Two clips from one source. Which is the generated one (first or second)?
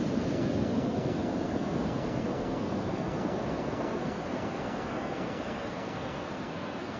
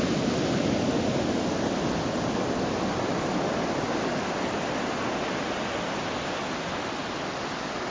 first